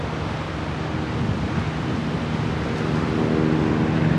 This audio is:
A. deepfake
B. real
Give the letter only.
B